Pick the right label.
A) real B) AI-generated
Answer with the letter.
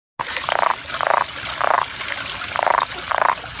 A